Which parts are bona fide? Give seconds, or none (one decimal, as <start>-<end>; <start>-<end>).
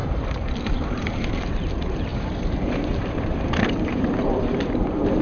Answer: 0.0-0.6